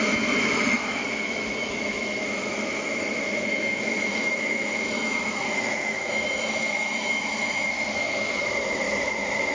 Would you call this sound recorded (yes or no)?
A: no